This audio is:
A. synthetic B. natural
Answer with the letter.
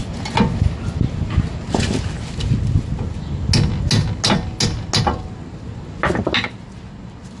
B